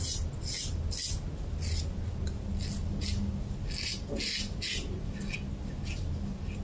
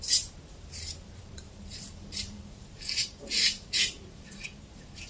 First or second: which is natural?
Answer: first